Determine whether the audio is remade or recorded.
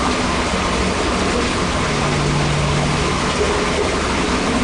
recorded